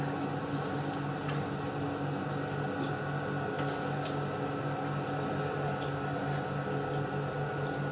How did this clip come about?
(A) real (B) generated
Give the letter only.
A